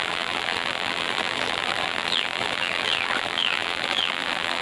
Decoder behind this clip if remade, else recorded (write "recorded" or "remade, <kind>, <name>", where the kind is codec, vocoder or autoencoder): remade, vocoder, BigVGAN v2